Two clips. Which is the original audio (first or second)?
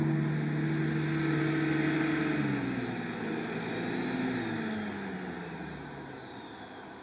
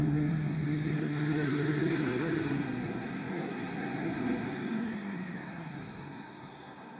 first